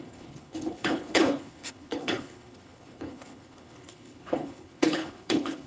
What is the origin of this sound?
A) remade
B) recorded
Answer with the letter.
A